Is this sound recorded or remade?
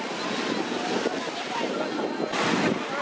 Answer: recorded